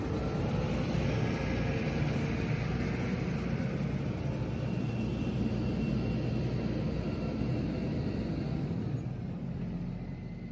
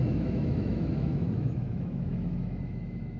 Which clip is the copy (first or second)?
second